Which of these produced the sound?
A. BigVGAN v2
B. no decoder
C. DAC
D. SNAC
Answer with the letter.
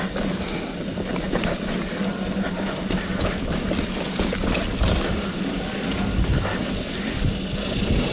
B